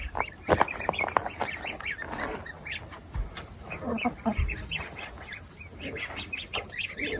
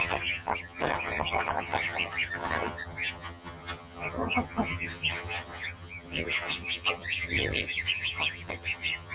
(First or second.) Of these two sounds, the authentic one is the first